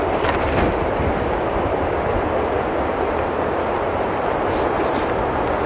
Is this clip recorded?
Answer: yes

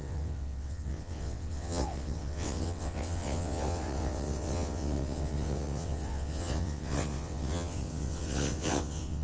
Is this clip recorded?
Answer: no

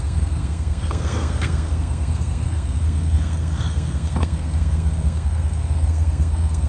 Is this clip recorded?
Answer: no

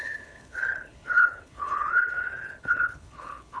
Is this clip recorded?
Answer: no